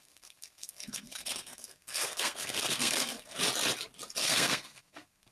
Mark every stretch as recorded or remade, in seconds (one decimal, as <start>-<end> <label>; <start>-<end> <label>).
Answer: 0.0-3.4 remade; 3.4-4.2 recorded; 4.2-5.3 remade